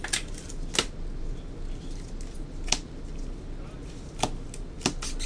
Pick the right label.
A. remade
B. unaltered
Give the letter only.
B